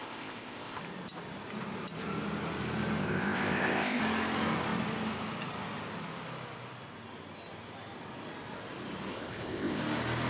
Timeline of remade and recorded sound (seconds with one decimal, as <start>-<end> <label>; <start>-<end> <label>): 0.0-0.8 remade; 0.8-3.0 recorded; 3.0-4.0 remade; 4.0-9.1 recorded; 9.1-9.8 remade; 9.8-10.3 recorded